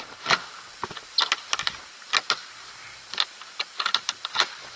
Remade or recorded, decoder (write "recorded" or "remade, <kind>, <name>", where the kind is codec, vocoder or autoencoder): recorded